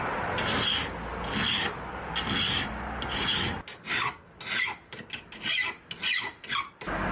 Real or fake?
real